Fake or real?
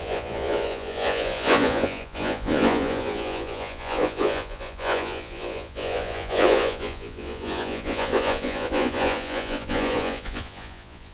fake